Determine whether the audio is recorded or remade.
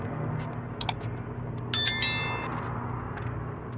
recorded